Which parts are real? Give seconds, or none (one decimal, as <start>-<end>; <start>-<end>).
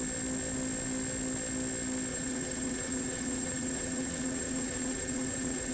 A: 0.0-2.1